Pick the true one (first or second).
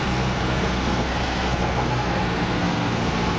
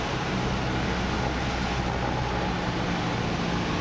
second